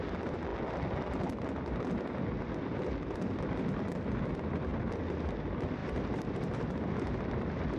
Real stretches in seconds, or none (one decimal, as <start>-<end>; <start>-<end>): 0.0-5.8; 6.7-7.8